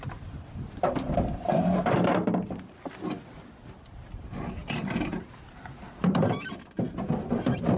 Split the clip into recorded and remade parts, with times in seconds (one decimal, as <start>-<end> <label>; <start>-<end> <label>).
0.0-4.6 recorded; 4.6-6.9 remade; 6.9-7.8 recorded